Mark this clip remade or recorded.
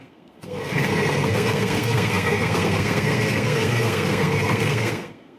remade